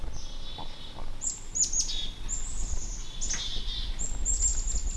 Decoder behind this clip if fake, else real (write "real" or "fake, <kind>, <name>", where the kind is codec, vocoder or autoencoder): real